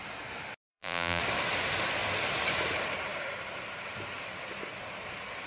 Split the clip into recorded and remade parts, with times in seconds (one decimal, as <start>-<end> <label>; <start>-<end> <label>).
0.0-0.7 recorded; 0.7-1.2 remade; 1.2-5.5 recorded